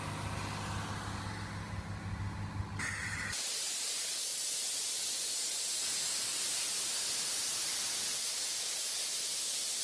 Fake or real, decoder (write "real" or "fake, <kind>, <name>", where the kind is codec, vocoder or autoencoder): real